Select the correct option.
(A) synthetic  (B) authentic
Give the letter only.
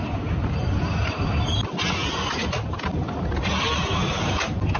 B